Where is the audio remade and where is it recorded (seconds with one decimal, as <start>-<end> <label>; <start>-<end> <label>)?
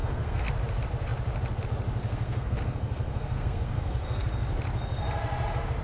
0.0-0.5 remade; 0.5-2.0 recorded; 2.0-4.3 remade; 4.3-5.8 recorded